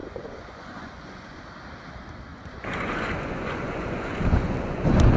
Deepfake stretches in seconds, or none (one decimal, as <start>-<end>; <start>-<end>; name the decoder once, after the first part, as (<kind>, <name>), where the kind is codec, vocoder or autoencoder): 0.0-1.4 (vocoder, Vocos); 2.3-5.2